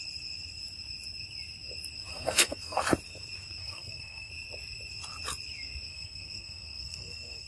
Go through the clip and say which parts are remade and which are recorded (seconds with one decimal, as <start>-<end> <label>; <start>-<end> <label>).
0.0-2.1 recorded; 2.1-2.8 remade; 2.8-3.6 recorded; 3.6-4.3 remade; 4.3-5.9 recorded; 5.9-7.5 remade